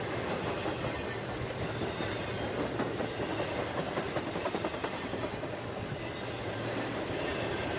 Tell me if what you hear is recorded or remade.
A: recorded